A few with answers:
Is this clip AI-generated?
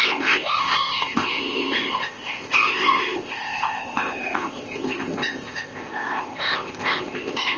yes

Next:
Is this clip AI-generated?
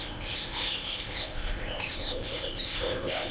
yes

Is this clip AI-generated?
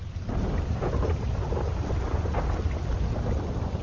no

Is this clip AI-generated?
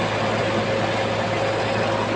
no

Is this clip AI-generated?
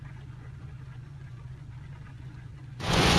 yes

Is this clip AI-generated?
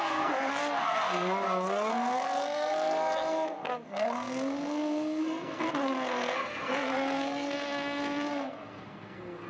yes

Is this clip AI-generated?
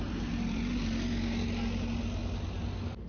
no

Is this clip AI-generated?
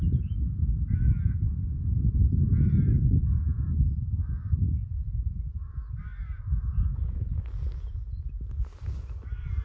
no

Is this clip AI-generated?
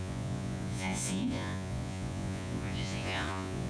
yes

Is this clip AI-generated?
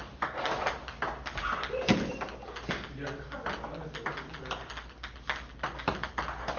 no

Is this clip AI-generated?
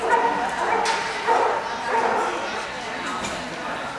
no